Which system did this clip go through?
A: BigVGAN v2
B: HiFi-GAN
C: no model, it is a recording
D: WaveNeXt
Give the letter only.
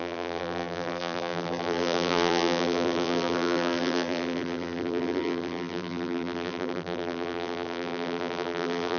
A